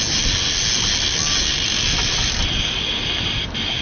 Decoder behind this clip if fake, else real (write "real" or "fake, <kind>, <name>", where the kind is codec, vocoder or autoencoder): real